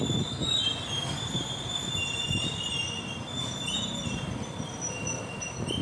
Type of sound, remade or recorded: recorded